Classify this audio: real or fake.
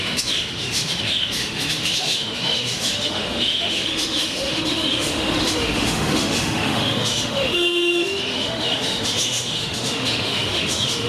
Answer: fake